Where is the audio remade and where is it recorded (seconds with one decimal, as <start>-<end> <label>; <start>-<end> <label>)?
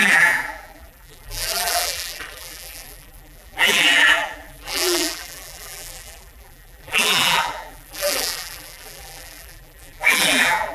0.0-10.7 remade